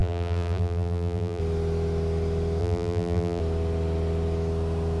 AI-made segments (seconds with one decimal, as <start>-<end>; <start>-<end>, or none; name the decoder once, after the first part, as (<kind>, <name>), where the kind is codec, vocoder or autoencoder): 0.0-1.4 (vocoder, BigVGAN v2); 2.6-3.4